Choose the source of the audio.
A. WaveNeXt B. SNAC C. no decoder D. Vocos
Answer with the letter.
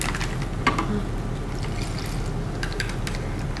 C